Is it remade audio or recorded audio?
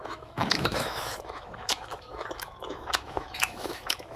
remade